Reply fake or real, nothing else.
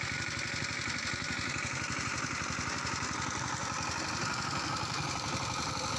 fake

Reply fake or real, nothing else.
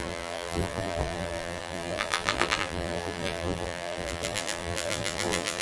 fake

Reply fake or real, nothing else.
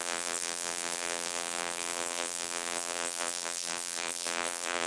fake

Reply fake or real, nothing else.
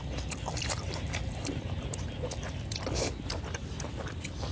fake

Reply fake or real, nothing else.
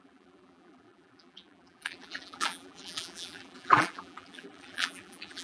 fake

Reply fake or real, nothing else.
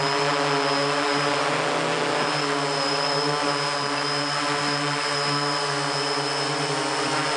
real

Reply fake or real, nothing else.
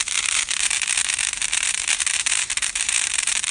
fake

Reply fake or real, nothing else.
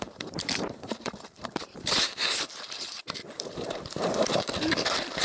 fake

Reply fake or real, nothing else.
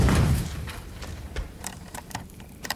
fake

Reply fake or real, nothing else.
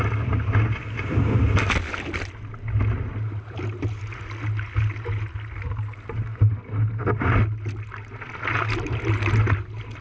real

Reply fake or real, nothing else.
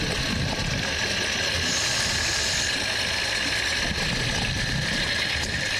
real